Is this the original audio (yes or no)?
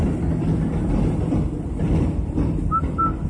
yes